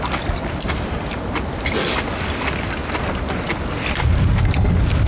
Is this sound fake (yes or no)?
no